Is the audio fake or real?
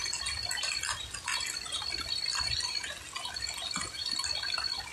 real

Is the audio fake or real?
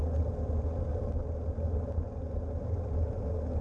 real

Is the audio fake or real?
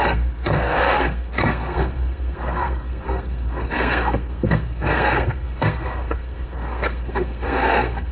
fake